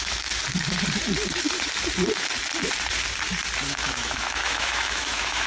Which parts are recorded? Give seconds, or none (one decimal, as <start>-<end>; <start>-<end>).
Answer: 0.4-3.7